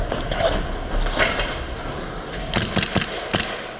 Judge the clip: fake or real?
real